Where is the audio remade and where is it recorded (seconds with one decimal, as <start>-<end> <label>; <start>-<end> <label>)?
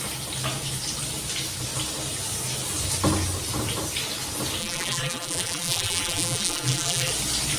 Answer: 0.0-4.6 recorded; 4.6-7.1 remade; 7.1-7.6 recorded